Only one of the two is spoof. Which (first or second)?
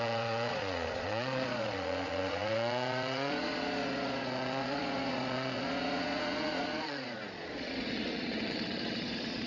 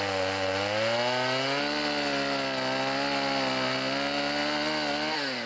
first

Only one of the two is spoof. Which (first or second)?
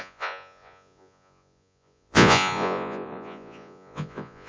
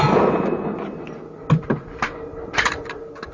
first